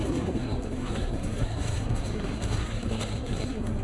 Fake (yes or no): yes